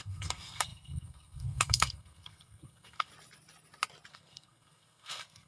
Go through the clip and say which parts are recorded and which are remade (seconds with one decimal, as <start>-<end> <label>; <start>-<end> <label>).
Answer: 0.0-3.1 remade; 3.1-4.1 recorded; 4.1-5.5 remade